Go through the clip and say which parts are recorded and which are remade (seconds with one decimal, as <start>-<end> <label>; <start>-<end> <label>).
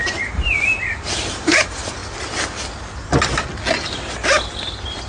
0.0-2.0 remade; 2.0-5.1 recorded